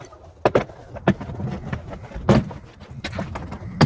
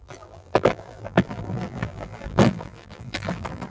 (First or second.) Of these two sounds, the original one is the first